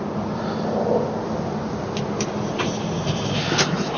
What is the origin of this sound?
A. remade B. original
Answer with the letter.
B